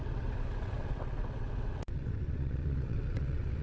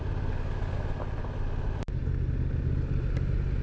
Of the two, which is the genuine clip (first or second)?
second